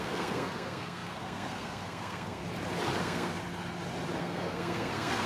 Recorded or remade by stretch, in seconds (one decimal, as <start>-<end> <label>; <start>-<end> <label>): 0.0-2.4 remade; 2.4-3.0 recorded; 3.0-3.4 remade; 3.4-4.2 recorded; 4.2-5.3 remade